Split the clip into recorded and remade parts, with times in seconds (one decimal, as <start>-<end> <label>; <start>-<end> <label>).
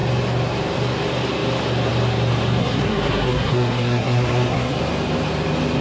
0.0-2.6 recorded; 2.6-4.8 remade; 4.8-5.8 recorded